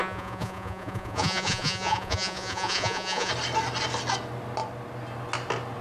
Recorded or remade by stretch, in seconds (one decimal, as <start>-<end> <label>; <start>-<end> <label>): 0.0-3.3 remade; 3.3-5.8 recorded